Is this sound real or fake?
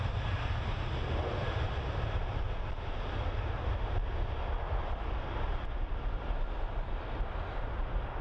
real